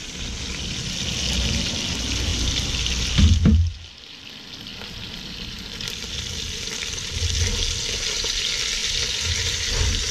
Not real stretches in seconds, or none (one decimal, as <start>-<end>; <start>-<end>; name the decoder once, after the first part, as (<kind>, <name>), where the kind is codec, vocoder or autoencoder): 4.7-7.2 (vocoder, BigVGAN v2)